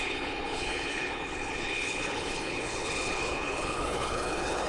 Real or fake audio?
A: fake